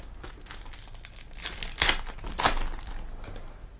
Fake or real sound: real